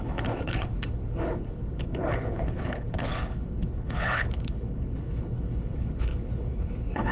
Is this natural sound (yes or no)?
no